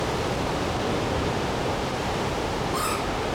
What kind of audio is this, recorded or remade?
recorded